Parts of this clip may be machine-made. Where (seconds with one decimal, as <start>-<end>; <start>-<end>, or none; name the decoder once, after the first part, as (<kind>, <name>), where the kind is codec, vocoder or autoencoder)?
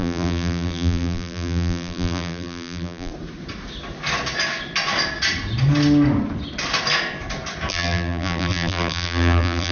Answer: 0.0-3.1 (vocoder, BigVGAN v2); 7.7-9.7